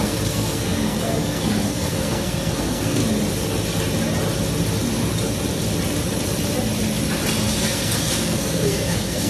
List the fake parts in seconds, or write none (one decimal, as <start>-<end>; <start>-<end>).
0.0-3.0; 7.6-9.3